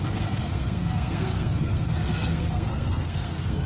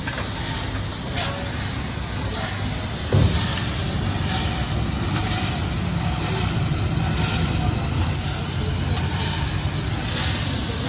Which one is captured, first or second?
second